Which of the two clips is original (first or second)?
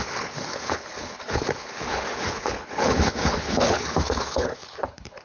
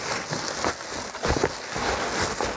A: second